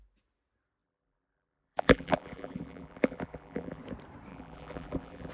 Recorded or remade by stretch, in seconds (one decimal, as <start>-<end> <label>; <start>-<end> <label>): 0.0-0.8 recorded; 0.8-3.8 remade; 3.8-4.3 recorded; 4.3-5.3 remade